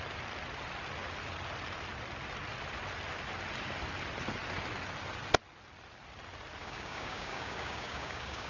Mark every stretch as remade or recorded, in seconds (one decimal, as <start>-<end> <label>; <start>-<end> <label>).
0.0-6.6 recorded; 6.6-8.5 remade